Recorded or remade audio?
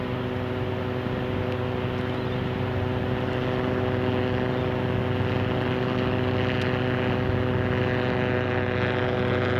recorded